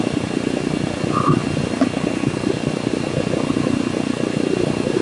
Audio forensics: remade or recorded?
recorded